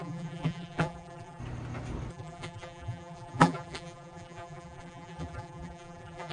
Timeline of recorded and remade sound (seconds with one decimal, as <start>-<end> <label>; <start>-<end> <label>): 0.0-1.4 remade; 1.4-2.1 recorded; 2.1-6.3 remade